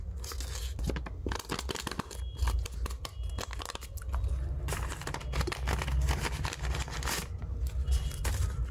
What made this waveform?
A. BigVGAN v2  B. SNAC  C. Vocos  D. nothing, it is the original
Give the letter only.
D